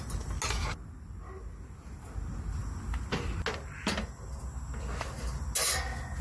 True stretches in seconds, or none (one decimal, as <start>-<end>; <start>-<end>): 0.0-6.2